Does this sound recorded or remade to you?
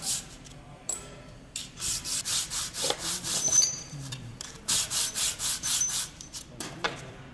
remade